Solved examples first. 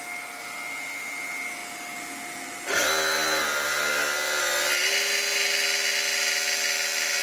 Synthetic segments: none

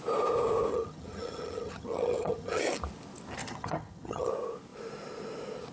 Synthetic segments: 0.7-2.6 (vocoder, HiFi-GAN); 3.4-4.3